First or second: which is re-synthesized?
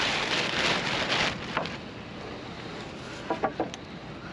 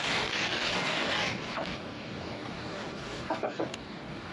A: second